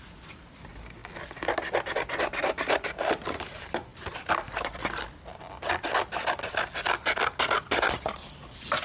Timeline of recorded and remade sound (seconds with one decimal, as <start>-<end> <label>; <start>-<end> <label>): 0.0-1.0 recorded; 1.0-3.5 remade; 3.5-3.9 recorded; 3.9-5.7 remade; 5.7-8.8 recorded